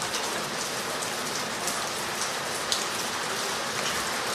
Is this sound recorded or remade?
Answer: recorded